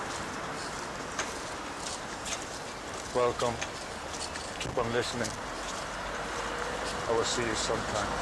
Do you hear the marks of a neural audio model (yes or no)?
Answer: no